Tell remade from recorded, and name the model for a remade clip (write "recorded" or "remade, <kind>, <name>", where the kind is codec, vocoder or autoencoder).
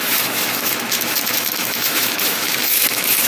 remade, autoencoder, DAC-VAE